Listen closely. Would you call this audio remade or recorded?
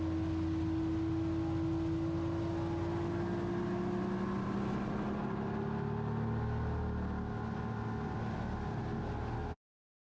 recorded